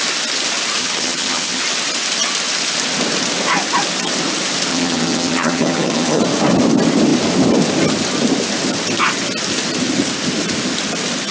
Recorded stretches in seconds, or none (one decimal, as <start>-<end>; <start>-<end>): 0.0-0.8; 1.6-4.7; 6.2-11.3